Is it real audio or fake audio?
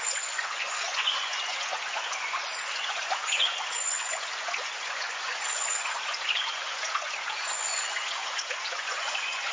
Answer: fake